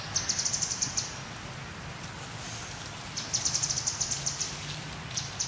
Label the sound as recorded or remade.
recorded